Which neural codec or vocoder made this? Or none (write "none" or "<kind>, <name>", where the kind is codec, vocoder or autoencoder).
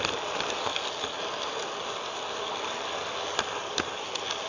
none